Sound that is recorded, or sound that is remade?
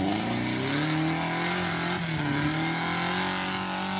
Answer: recorded